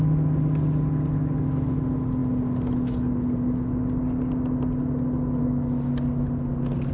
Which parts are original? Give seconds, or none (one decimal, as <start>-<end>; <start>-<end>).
0.0-6.9